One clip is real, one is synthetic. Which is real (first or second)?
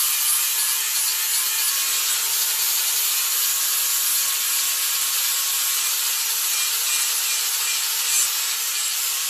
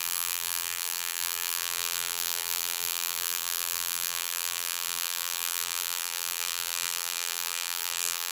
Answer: first